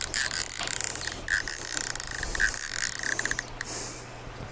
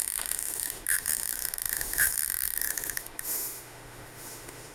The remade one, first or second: second